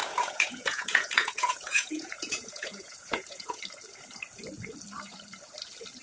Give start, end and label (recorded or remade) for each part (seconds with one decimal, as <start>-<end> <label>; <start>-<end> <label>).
0.0-3.6 remade; 3.6-6.0 recorded